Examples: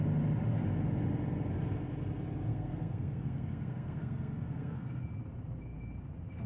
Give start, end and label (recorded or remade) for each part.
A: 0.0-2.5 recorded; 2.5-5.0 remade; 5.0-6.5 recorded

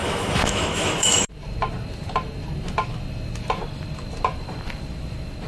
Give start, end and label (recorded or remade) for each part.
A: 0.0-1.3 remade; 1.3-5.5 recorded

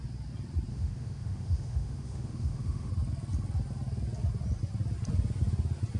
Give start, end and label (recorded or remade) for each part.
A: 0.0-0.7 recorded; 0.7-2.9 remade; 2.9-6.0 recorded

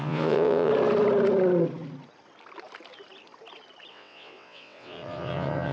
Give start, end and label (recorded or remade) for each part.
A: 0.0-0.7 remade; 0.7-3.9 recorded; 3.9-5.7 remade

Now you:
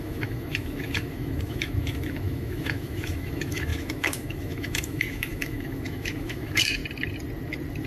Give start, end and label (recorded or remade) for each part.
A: 0.0-6.8 remade; 6.8-7.9 recorded